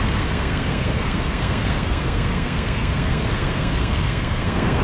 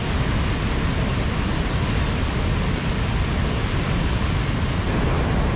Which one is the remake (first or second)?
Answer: first